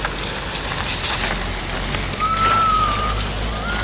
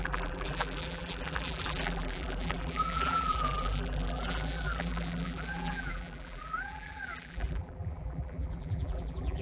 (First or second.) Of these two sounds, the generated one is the second